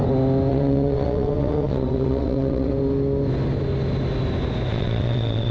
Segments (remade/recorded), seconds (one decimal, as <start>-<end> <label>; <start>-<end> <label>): 0.0-0.5 recorded; 0.5-2.7 remade; 2.7-4.7 recorded; 4.7-5.5 remade